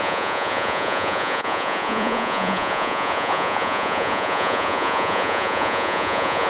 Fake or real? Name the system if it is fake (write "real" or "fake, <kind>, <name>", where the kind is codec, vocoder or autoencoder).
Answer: fake, vocoder, Vocos